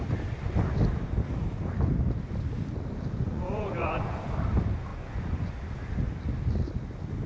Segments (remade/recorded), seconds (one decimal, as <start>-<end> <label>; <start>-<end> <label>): 0.0-3.3 recorded; 3.3-4.2 remade; 4.2-4.9 recorded; 4.9-5.5 remade; 5.5-7.3 recorded